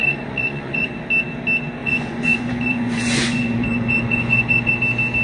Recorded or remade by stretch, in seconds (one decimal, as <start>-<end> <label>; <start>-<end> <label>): 0.0-0.9 remade; 0.9-1.8 recorded; 1.8-4.7 remade; 4.7-5.2 recorded